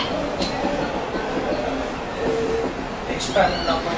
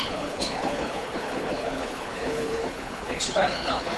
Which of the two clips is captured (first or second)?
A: first